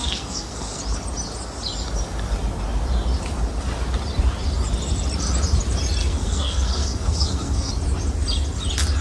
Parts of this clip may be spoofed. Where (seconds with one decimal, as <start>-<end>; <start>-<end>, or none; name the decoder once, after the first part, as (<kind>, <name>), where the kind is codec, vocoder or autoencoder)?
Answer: 0.0-0.8 (codec, SNAC); 6.0-7.7